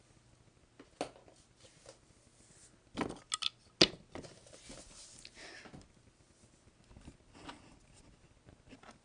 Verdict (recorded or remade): recorded